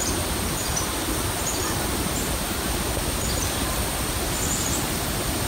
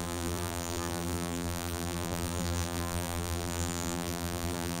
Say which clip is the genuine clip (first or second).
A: first